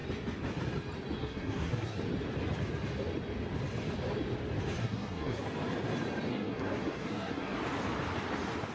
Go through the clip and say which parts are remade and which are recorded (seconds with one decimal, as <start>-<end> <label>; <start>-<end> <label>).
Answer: 0.0-1.2 recorded; 1.2-2.0 remade; 2.0-4.8 recorded; 4.8-5.4 remade; 5.4-6.3 recorded; 6.3-7.6 remade; 7.6-8.7 recorded